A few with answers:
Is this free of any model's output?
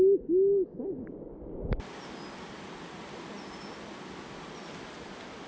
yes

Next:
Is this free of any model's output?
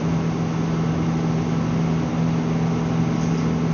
yes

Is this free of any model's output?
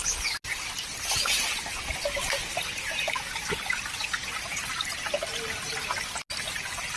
yes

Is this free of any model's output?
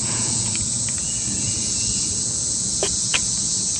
no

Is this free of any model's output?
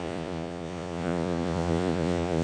no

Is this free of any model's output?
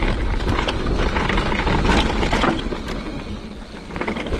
yes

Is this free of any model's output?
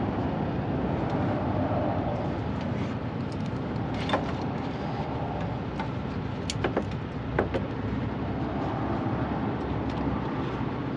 yes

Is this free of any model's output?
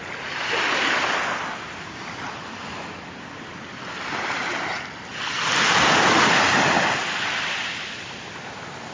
yes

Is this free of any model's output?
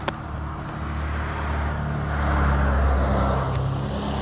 yes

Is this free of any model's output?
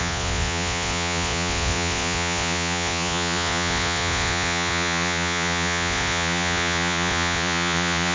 no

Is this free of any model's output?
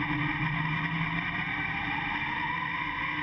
yes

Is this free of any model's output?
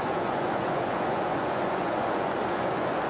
no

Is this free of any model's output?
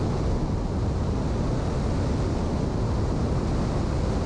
yes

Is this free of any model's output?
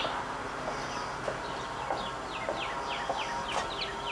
yes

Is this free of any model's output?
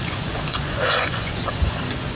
no